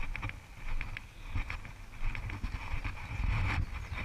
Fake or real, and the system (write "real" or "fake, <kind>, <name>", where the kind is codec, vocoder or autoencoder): real